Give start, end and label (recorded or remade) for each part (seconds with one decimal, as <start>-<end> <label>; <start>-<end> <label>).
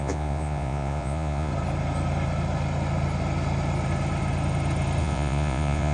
0.0-1.5 remade; 1.5-5.0 recorded; 5.0-5.9 remade